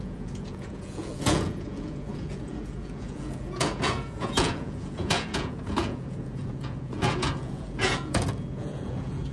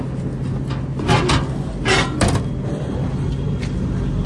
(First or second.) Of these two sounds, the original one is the second